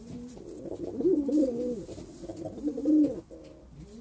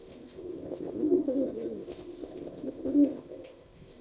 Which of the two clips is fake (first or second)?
second